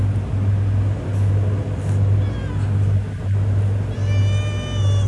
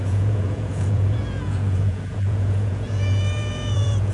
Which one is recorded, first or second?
first